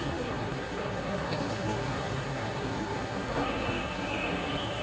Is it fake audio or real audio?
fake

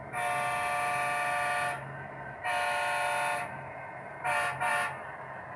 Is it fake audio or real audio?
real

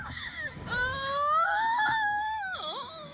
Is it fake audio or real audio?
fake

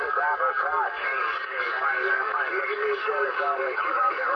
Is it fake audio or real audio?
fake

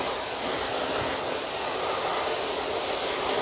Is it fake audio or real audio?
real